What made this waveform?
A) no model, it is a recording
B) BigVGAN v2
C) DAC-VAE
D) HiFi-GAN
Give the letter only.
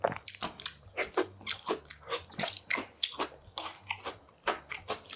A